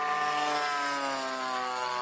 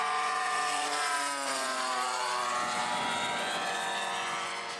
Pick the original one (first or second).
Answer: first